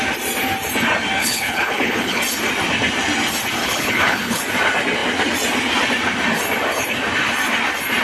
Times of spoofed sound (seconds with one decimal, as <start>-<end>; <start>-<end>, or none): 1.2-2.2; 3.6-4.4